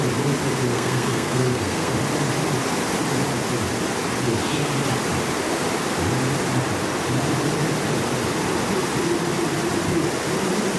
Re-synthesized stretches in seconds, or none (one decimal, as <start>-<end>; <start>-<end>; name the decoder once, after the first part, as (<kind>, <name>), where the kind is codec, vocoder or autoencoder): 0.7-1.9 (codec, SNAC)